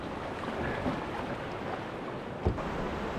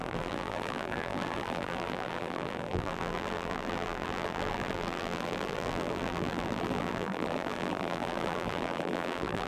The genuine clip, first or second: first